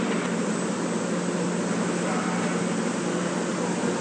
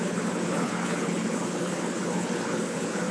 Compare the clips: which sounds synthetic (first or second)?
second